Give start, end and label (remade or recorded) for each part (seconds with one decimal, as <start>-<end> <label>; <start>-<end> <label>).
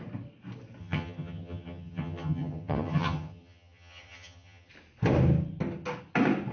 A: 0.0-0.8 recorded; 0.8-4.7 remade; 4.7-6.5 recorded